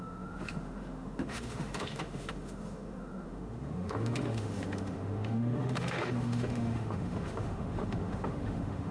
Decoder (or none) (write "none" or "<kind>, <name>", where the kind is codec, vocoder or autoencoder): autoencoder, DAC-VAE